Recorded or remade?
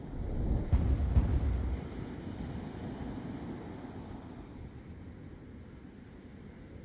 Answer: recorded